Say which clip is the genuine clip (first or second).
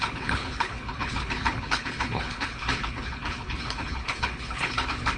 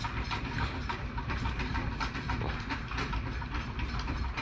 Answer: second